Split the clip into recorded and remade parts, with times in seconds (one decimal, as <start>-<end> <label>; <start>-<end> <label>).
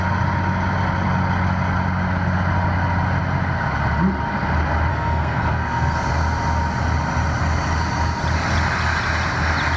0.0-4.9 recorded; 4.9-6.0 remade; 6.0-9.8 recorded